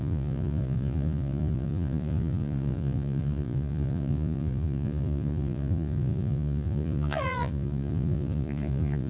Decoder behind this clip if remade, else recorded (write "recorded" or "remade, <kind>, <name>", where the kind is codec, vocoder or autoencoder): remade, vocoder, Vocos